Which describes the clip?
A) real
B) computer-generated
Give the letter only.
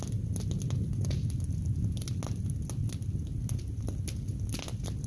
A